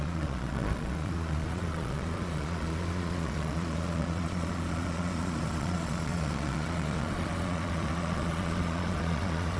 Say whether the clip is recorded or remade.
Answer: remade